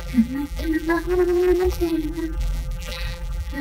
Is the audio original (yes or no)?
no